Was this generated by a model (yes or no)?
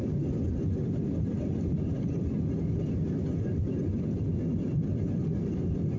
no